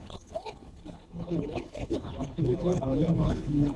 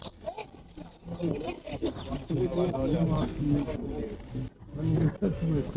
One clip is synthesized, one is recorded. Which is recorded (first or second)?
second